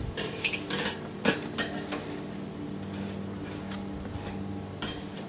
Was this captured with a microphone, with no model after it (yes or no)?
yes